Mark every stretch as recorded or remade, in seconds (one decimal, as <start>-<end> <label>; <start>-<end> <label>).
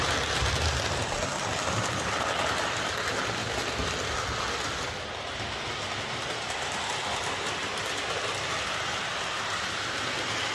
0.0-10.5 recorded